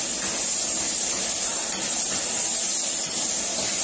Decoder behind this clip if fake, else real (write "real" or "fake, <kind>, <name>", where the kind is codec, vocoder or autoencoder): real